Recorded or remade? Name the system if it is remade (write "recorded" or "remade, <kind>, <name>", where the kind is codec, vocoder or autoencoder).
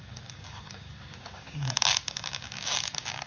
remade, codec, DAC